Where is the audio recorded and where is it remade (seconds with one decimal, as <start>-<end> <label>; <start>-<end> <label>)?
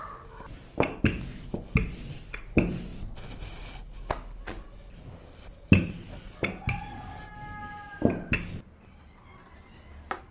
0.0-10.3 recorded